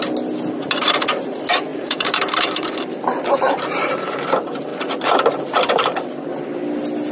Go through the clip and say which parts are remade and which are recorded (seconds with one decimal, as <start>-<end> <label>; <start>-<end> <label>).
0.0-1.7 recorded; 1.7-4.2 remade; 4.2-7.1 recorded